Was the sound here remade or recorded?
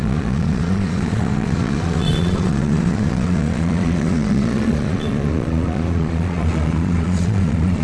remade